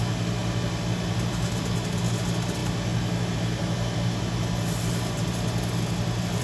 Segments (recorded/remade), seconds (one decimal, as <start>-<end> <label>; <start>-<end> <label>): 0.0-6.4 recorded